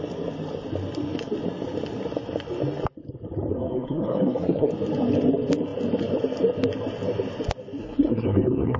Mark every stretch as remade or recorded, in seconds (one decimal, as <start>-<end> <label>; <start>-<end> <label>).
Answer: 0.0-3.5 recorded; 3.5-4.7 remade; 4.7-7.8 recorded; 7.8-8.8 remade

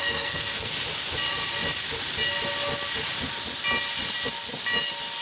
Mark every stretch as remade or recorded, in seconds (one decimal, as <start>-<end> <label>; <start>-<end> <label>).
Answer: 0.0-0.7 remade; 0.7-5.2 recorded